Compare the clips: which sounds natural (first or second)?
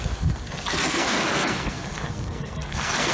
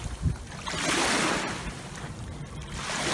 second